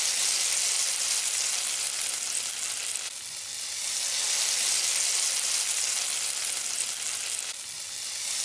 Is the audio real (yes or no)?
yes